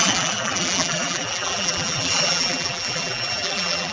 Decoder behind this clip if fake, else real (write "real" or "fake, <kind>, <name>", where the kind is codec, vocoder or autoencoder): fake, vocoder, BigVGAN v2